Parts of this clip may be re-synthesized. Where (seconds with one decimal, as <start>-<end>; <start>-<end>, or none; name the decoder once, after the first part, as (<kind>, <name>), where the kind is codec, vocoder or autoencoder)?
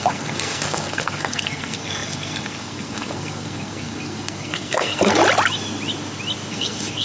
0.0-5.2 (codec, SNAC); 6.5-7.0